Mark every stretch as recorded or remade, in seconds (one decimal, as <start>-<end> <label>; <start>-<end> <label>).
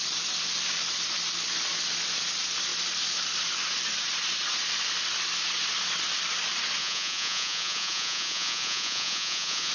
0.0-6.8 recorded; 6.8-9.7 remade